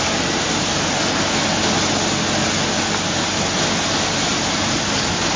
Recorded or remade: recorded